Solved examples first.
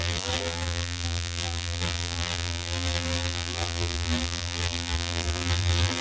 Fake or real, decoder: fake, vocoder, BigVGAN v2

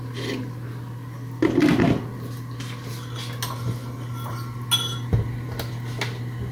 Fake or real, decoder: real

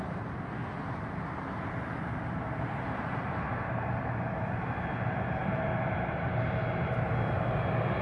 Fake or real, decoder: real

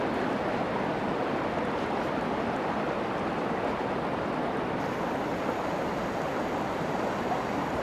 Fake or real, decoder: real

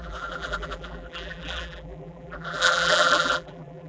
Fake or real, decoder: fake, vocoder, BigVGAN v2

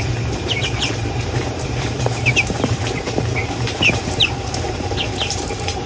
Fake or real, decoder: fake, vocoder, BigVGAN v2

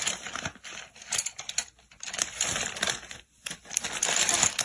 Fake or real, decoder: fake, vocoder, BigVGAN v2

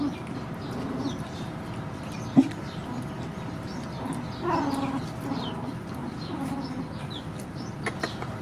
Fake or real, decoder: real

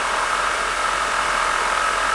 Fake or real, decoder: fake, vocoder, BigVGAN v2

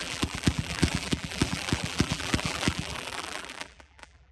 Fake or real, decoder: fake, vocoder, BigVGAN v2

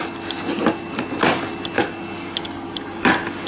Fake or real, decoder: real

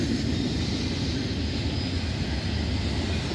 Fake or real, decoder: real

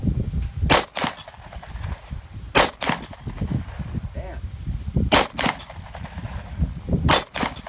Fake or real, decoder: real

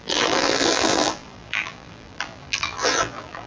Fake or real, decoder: fake, vocoder, BigVGAN v2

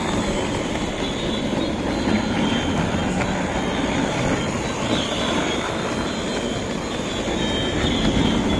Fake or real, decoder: real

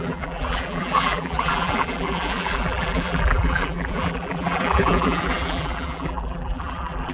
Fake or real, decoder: fake, vocoder, BigVGAN v2